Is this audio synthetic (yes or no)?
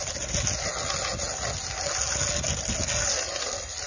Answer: no